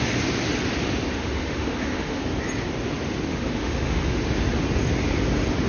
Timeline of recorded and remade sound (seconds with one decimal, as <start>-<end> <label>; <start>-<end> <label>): 0.0-1.1 recorded; 1.1-2.2 remade; 2.2-3.3 recorded; 3.3-4.2 remade; 4.2-5.7 recorded